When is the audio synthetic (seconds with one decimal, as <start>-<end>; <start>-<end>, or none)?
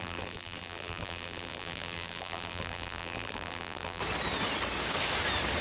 0.0-4.0